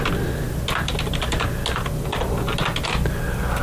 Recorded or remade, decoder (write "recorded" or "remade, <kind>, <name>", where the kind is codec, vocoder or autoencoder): recorded